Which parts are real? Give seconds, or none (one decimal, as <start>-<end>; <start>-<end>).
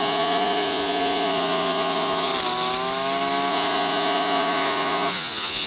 2.3-3.5